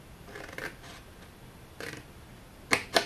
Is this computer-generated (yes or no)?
no